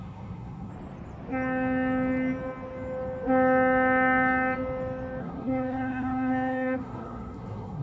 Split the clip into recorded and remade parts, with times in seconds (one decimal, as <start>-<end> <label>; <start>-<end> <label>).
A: 0.0-0.7 remade; 0.7-5.2 recorded; 5.2-7.8 remade